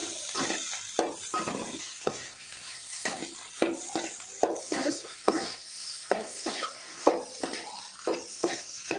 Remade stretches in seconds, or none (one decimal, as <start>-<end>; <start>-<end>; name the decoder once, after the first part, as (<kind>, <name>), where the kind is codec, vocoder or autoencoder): 1.8-3.2 (codec, SNAC); 4.6-7.1; 8.3-9.0